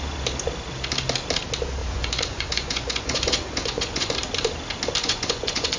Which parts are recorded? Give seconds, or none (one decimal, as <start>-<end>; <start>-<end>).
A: 0.0-1.8; 4.1-5.0